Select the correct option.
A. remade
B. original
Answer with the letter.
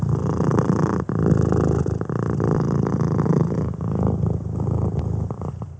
B